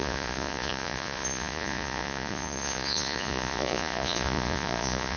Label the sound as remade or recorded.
remade